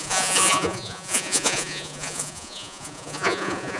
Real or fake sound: fake